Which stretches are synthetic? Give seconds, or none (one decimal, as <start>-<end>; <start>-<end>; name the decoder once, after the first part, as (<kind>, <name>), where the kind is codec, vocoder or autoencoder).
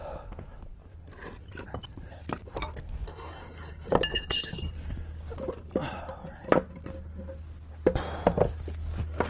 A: 4.1-4.7 (codec, HILCodec)